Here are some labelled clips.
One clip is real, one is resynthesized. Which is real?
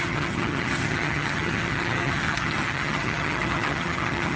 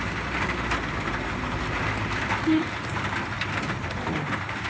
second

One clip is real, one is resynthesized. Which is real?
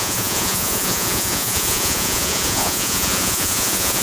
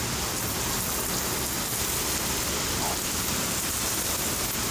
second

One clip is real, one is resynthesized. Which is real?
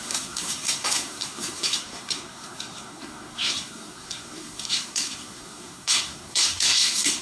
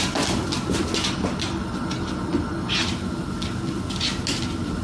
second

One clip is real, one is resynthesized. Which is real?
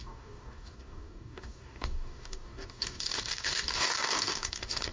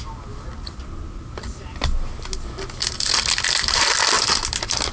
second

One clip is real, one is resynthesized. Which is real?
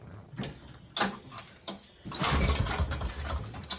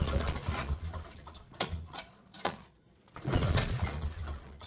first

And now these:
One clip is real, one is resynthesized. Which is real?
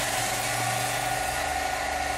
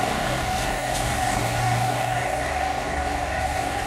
first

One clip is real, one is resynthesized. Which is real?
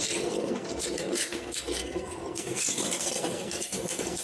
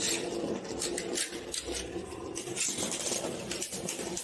second